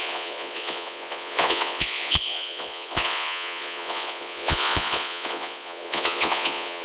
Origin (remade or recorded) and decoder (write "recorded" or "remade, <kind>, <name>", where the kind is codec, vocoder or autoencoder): remade, vocoder, Vocos